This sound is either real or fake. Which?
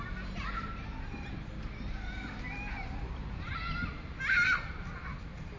real